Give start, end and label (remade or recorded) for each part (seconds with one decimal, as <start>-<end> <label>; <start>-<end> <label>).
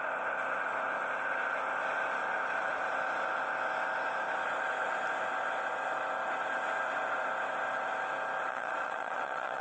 0.0-8.5 recorded; 8.5-9.6 remade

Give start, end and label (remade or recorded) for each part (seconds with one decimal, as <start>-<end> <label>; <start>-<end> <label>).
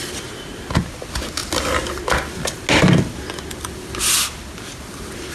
0.0-5.3 recorded